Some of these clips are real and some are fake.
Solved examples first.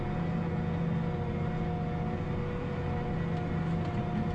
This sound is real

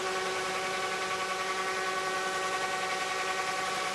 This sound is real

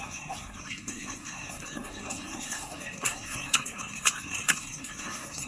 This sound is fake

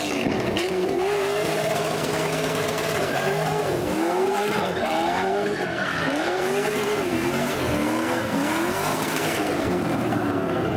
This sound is fake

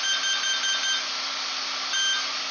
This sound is real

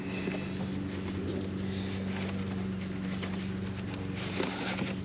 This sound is real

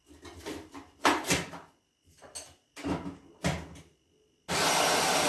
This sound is real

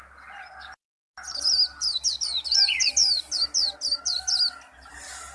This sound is real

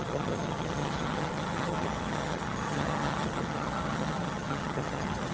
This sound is fake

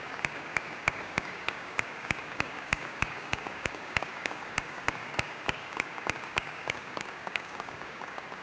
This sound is fake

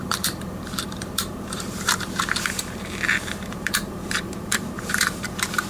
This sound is fake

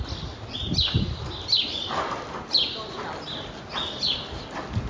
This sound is real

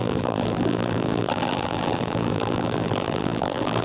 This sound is fake